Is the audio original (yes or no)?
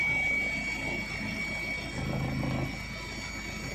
yes